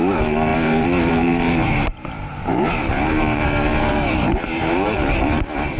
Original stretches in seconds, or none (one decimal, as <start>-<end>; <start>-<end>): none